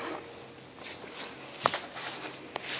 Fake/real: real